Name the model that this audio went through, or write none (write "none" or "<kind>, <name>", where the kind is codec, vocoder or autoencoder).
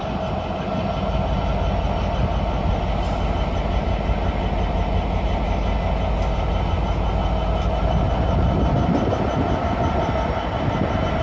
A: none